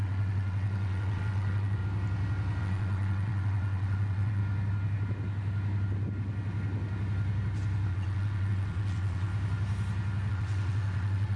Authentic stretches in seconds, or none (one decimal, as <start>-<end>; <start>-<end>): 1.8-2.6; 4.4-7.9; 9.3-10.3